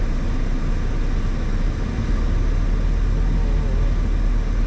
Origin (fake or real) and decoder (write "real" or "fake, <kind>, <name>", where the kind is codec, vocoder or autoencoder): real